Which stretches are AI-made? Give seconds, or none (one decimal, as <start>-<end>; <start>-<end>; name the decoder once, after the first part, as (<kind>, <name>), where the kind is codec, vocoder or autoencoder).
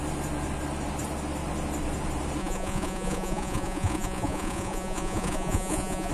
2.4-6.1 (vocoder, Vocos)